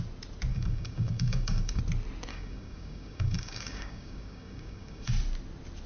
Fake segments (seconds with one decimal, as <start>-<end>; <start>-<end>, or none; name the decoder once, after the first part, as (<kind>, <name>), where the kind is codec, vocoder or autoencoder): 0.5-1.8 (codec, DAC); 2.3-5.1